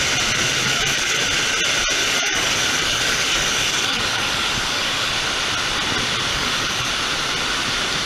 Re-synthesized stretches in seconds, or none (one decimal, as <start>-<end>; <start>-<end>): 0.6-1.2; 2.0-5.1; 6.3-6.9